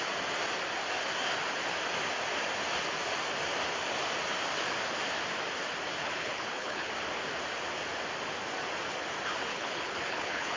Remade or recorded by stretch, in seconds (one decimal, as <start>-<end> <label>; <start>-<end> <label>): 0.0-6.0 recorded; 6.0-6.9 remade; 6.9-9.5 recorded; 9.5-10.6 remade